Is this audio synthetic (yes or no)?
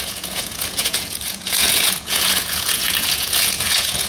yes